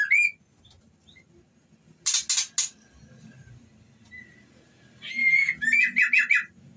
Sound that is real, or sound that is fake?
real